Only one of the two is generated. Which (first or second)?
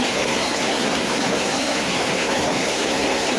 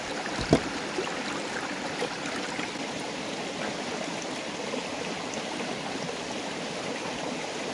first